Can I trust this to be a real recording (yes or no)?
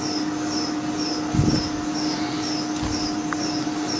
yes